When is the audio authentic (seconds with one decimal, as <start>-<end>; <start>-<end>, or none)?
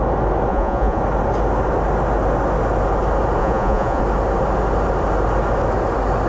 0.0-0.5; 1.0-3.4; 4.0-6.3